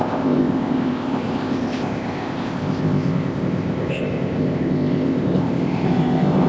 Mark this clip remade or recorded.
remade